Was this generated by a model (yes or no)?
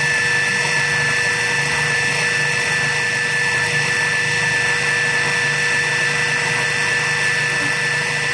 no